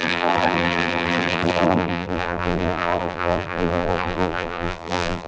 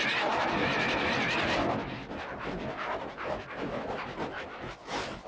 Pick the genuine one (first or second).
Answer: second